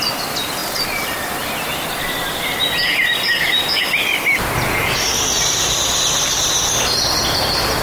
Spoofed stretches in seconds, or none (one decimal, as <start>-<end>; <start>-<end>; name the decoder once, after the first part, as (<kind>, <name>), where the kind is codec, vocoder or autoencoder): none

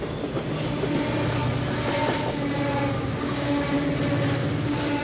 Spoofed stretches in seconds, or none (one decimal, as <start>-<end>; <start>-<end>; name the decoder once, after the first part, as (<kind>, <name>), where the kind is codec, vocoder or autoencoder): 3.0-3.6 (codec, DAC)

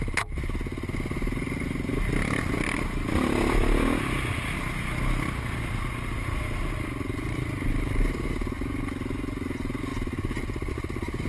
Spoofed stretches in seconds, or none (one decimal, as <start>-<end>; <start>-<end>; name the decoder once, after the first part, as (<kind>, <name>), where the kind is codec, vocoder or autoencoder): none

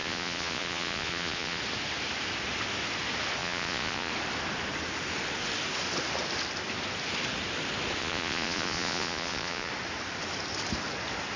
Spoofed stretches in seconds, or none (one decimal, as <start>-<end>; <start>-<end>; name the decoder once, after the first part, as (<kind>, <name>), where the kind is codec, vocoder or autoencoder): 0.0-1.6 (vocoder, Vocos); 3.4-4.1; 8.0-9.7

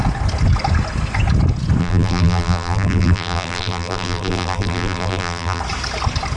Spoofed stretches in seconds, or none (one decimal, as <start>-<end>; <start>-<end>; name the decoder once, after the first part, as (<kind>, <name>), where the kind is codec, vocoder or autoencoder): 1.8-5.6 (vocoder, BigVGAN v2)

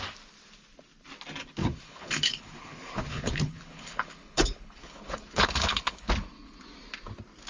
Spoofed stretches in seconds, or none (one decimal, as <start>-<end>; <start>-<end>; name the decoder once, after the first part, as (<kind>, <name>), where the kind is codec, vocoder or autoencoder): 1.6-6.1 (codec, HILCodec)

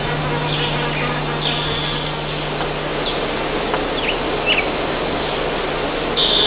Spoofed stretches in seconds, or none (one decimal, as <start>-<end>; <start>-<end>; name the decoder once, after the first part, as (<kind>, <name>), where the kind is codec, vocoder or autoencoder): none